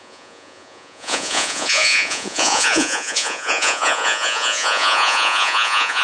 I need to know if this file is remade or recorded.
remade